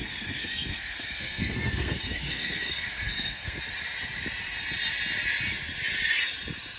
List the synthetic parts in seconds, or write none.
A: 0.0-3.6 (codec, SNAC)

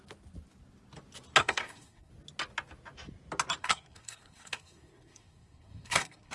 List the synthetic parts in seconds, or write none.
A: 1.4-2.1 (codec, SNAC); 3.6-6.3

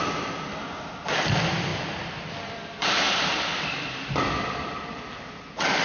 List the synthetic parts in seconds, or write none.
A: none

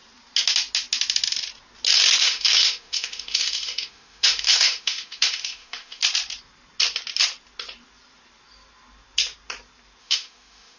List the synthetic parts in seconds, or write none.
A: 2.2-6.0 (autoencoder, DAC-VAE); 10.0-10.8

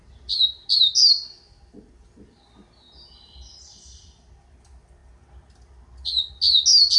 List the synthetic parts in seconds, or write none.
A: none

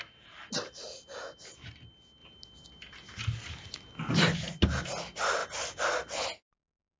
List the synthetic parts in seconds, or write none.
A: none

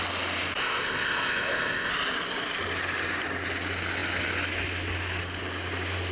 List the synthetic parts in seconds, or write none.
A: 0.6-1.9 (codec, ZipCodec)

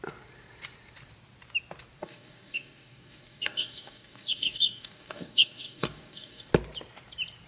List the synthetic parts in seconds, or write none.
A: 2.0-6.5 (codec, DAC)